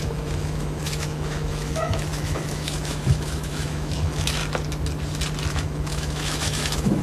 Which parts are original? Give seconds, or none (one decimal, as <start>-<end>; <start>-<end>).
4.4-5.5